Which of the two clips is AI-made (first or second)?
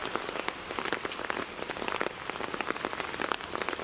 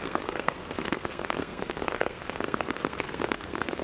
second